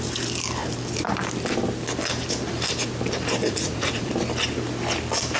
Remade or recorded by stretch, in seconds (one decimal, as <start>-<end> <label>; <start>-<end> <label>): 0.0-3.4 recorded; 3.4-4.1 remade; 4.1-5.4 recorded